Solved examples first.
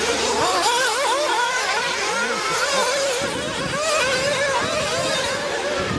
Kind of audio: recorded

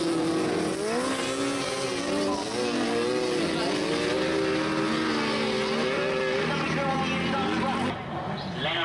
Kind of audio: recorded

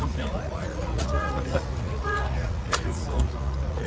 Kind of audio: remade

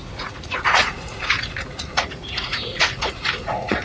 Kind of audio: remade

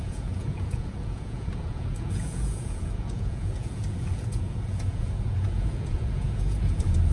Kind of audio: remade